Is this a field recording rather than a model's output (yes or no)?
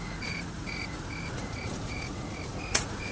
no